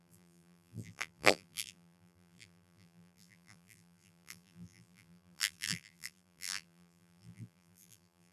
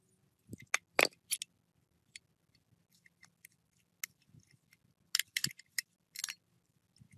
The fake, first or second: first